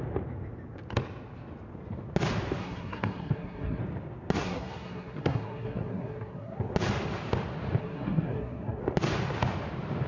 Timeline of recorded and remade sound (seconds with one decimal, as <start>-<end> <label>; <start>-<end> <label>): 0.0-2.6 recorded; 2.6-3.8 remade; 3.8-4.4 recorded; 4.4-6.7 remade; 6.7-7.8 recorded; 7.8-8.8 remade; 8.8-10.1 recorded